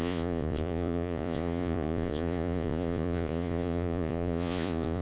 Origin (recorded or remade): remade